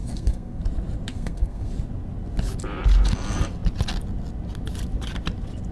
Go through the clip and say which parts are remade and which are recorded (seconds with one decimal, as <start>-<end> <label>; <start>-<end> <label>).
0.0-0.6 remade; 0.6-1.1 recorded; 1.1-1.7 remade; 1.7-5.7 recorded